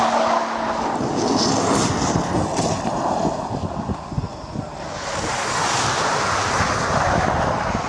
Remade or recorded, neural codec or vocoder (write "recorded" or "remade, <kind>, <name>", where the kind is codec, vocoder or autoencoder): recorded